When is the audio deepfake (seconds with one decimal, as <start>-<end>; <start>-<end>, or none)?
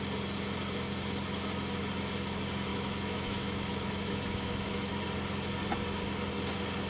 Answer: 2.7-5.0